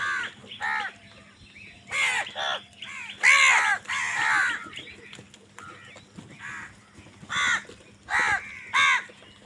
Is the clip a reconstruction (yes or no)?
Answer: no